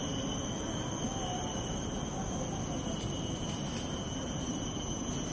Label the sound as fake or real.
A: real